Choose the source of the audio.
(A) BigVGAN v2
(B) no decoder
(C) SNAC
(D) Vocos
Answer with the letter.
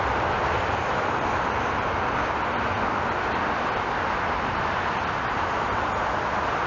B